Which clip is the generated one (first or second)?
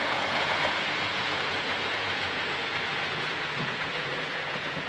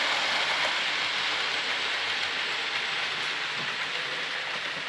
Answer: first